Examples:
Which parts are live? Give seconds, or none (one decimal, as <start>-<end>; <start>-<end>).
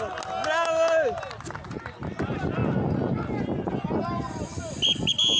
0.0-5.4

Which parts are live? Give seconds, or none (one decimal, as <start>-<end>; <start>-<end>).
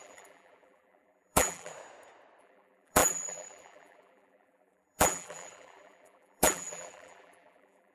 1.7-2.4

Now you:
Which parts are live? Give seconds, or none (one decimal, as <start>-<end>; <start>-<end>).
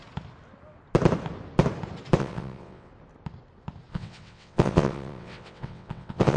0.0-2.2; 2.9-3.9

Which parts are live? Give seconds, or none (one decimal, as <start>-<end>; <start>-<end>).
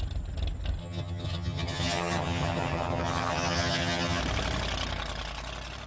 0.0-0.8; 4.2-5.9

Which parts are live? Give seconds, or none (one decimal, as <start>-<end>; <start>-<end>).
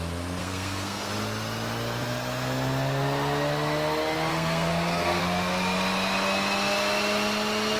0.0-0.4; 1.1-4.3; 5.2-7.8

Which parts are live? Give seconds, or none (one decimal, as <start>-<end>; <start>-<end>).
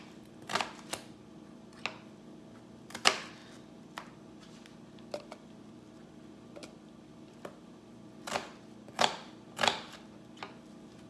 0.0-11.1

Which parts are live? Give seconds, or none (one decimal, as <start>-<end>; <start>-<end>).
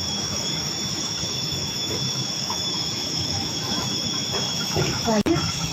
none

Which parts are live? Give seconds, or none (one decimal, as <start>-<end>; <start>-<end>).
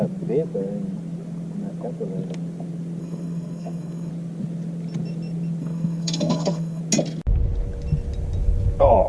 0.0-3.0; 4.1-5.6; 6.8-9.1